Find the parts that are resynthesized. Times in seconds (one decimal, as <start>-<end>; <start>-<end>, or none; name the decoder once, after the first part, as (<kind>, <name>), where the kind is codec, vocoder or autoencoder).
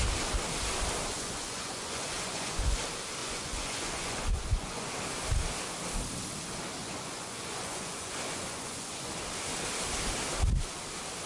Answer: 1.1-2.8 (vocoder, Vocos); 3.2-4.9; 6.8-9.1